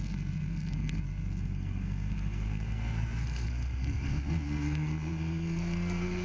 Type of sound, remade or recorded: remade